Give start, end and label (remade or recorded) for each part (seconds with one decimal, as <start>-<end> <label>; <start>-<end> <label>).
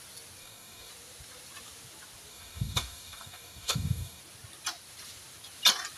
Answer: 0.0-0.4 recorded; 0.4-0.9 remade; 0.9-2.3 recorded; 2.3-4.2 remade; 4.2-6.0 recorded